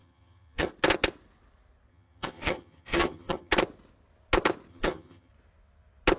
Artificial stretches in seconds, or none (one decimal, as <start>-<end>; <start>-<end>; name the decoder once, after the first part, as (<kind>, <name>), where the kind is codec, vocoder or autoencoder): 0.0-0.7 (vocoder, HiFi-GAN); 1.9-3.5; 4.7-5.3